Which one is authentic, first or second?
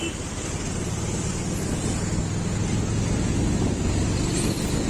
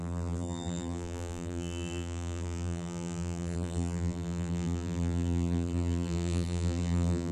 first